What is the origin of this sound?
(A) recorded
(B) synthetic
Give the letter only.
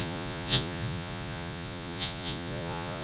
B